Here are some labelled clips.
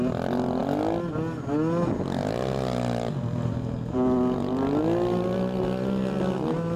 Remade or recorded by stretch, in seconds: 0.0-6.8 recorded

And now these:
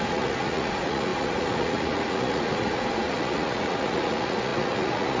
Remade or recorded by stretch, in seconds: 0.0-5.2 remade